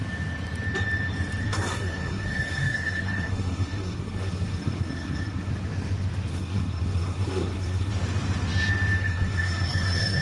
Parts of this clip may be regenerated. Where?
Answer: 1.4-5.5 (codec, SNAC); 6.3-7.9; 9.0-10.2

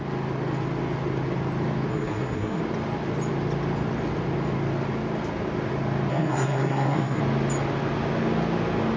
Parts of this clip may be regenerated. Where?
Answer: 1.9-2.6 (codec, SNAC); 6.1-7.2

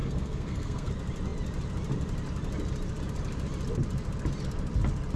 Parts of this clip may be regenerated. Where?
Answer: 0.0-0.9 (codec, SNAC)

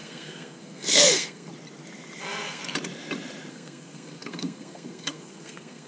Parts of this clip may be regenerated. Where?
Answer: 0.0-1.5 (codec, SNAC); 2.2-2.6; 3.5-5.9

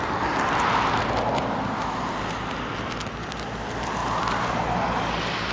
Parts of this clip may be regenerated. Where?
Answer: none

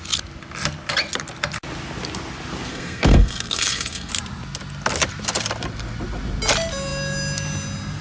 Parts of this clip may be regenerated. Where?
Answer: 2.7-4.1 (codec, SNAC)

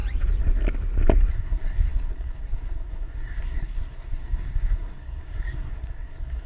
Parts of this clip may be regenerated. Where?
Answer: 1.3-6.5 (codec, SNAC)

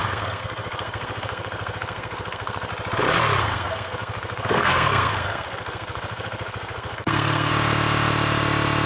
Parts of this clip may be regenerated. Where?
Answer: 0.0-2.7 (codec, SNAC); 3.4-7.5